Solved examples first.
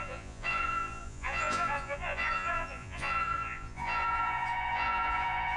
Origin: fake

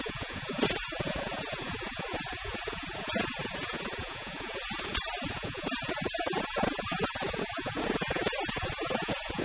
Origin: fake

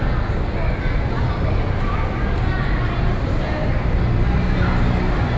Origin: real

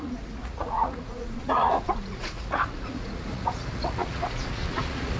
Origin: fake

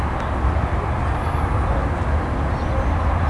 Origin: real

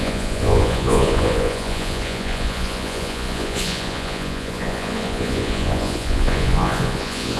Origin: fake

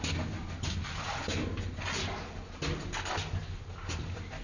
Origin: real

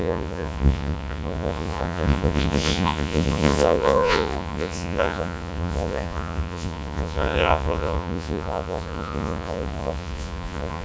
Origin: fake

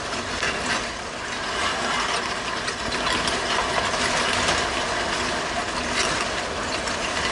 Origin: real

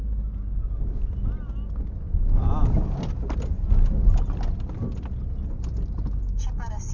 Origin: real